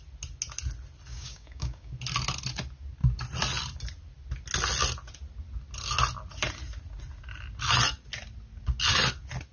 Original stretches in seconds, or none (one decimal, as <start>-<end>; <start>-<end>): 0.0-1.1; 1.9-9.5

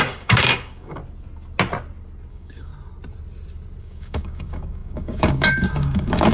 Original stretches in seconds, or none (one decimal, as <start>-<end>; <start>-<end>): 1.0-2.3; 2.7-3.8

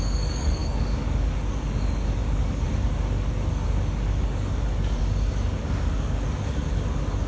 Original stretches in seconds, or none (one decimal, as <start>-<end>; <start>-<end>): none

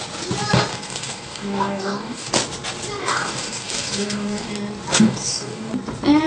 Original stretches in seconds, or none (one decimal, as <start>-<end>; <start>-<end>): 0.0-0.7; 2.3-3.0; 4.5-4.9; 5.7-6.3